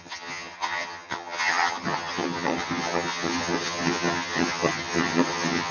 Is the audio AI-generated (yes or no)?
yes